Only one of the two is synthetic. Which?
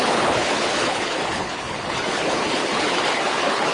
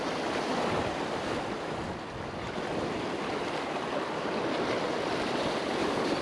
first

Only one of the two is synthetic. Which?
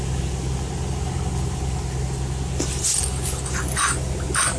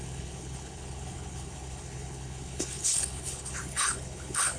second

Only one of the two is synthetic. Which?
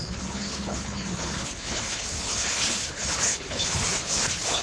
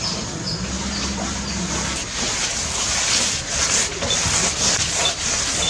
first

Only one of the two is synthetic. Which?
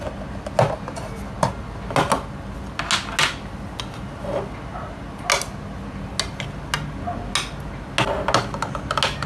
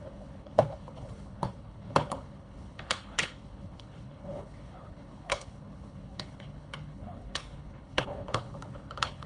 second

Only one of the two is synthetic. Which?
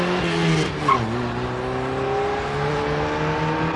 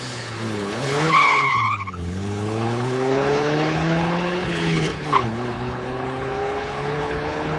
second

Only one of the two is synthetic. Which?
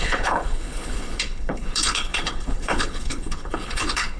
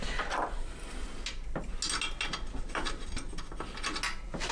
first